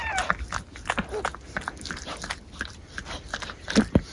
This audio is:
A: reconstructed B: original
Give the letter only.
B